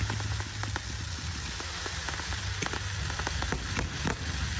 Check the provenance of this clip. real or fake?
real